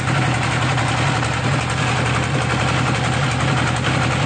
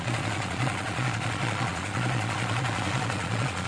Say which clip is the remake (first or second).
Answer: second